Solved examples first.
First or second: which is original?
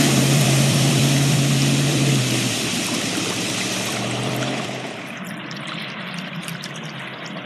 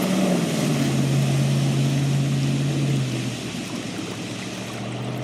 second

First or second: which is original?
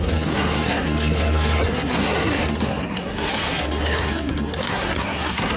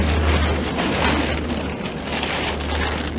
second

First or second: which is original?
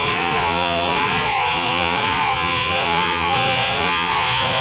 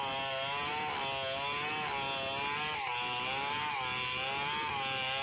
second